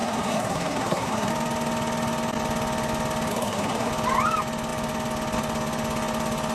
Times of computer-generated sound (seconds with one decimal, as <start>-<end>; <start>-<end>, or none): 0.0-1.3; 3.3-3.9